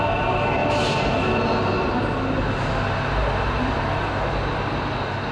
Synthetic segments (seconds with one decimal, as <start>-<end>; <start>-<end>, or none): none

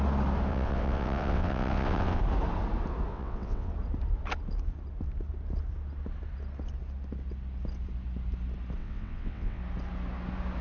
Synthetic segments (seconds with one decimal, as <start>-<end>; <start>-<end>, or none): 0.5-2.2; 3.1-3.7; 8.8-9.6

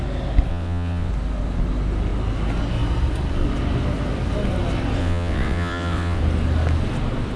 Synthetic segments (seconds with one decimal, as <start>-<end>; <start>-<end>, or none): 0.5-1.1; 5.0-6.2

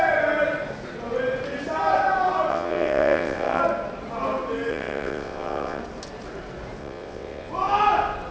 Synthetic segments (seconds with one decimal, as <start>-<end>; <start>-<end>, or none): 2.5-3.6; 4.7-5.8; 6.8-7.5